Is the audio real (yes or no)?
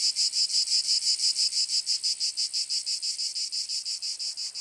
yes